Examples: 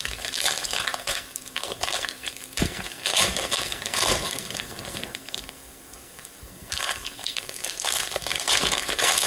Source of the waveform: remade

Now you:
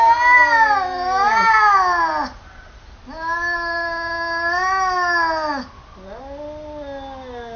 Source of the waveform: recorded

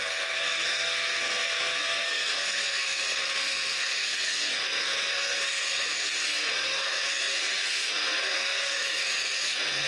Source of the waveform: remade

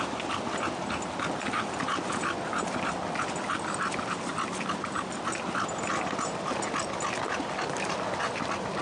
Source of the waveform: recorded